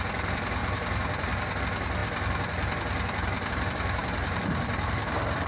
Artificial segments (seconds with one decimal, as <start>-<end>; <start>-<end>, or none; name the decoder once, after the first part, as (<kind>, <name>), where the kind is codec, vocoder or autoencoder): 0.0-2.0 (vocoder, BigVGAN v2); 3.5-5.5